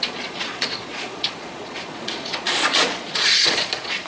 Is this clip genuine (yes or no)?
no